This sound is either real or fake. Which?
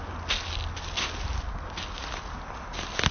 real